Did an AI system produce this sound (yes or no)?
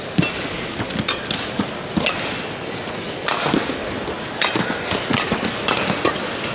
no